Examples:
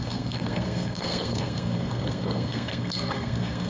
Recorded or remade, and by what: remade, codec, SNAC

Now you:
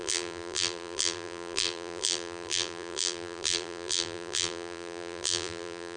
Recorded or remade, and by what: remade, vocoder, BigVGAN v2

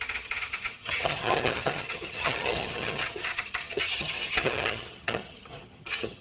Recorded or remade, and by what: remade, vocoder, HiFi-GAN